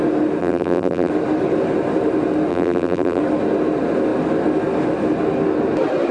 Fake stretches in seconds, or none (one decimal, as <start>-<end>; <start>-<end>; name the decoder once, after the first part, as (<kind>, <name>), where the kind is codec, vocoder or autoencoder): 0.4-1.1 (vocoder, BigVGAN v2); 2.5-3.2